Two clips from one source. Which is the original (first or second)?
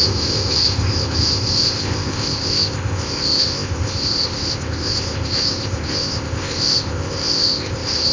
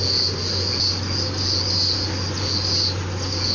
second